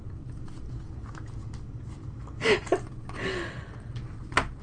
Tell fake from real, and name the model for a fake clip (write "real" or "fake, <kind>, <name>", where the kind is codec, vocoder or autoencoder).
real